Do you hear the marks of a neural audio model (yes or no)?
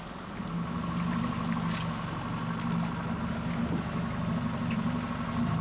no